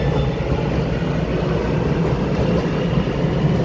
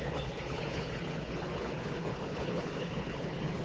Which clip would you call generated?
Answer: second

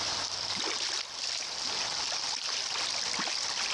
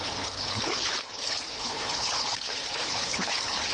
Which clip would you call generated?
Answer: second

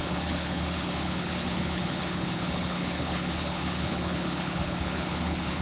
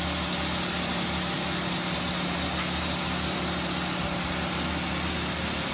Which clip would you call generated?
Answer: first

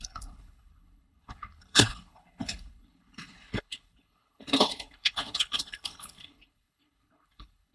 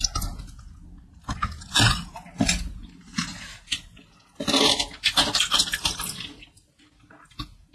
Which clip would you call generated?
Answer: first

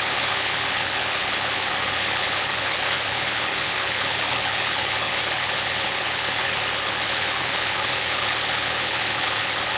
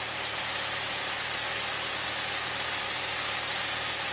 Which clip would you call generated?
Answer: first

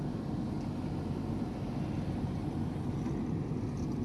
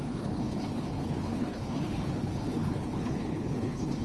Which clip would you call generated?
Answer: second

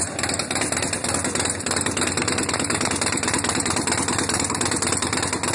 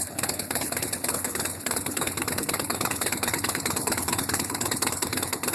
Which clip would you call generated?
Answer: second